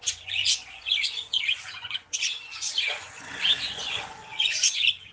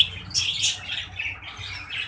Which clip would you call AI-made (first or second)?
first